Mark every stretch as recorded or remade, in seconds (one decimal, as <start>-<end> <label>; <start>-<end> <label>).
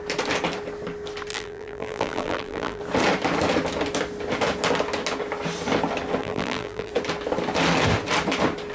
0.0-1.3 recorded; 1.3-2.8 remade; 2.8-6.2 recorded; 6.2-6.9 remade; 6.9-8.7 recorded